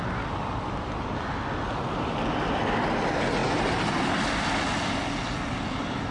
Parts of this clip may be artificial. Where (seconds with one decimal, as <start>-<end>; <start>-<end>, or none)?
none